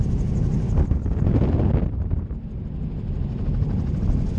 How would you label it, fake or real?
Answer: real